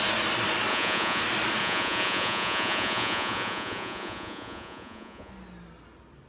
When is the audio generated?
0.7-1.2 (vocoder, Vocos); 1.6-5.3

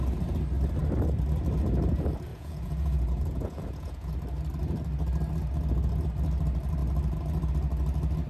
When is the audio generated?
2.3-4.1 (vocoder, Vocos)

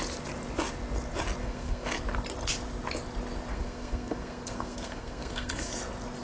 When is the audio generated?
1.4-1.9 (codec, SNAC); 3.5-5.7

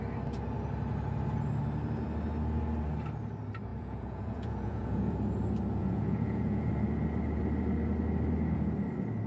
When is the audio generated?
3.7-5.1 (vocoder, Vocos); 5.8-6.7

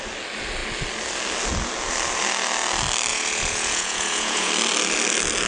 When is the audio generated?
3.1-4.5 (vocoder, Vocos)

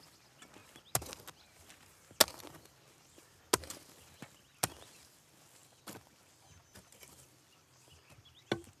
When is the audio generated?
none